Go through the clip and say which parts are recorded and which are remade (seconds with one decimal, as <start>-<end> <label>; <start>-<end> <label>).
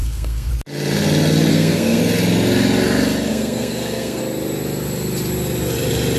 0.0-0.5 remade; 0.5-1.5 recorded; 1.5-2.0 remade; 2.0-3.3 recorded; 3.3-4.2 remade; 4.2-6.2 recorded